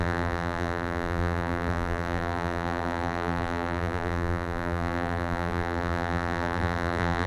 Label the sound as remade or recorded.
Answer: remade